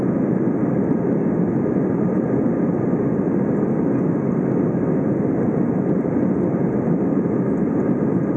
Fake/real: real